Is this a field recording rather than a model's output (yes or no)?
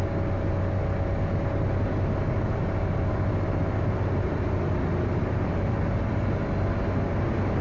yes